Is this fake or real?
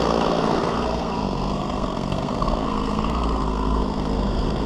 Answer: fake